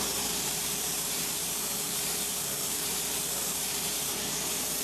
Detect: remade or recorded remade